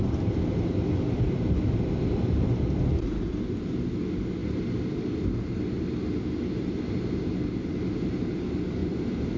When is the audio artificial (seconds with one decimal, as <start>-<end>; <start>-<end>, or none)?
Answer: 4.4-5.0; 8.8-9.4